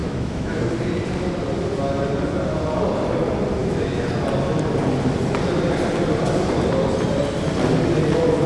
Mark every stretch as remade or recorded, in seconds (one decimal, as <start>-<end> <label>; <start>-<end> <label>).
0.0-0.6 remade; 0.6-3.6 recorded; 3.6-4.1 remade; 4.1-8.5 recorded